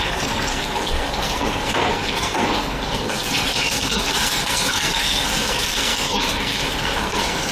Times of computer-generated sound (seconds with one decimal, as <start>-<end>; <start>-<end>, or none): 0.0-7.5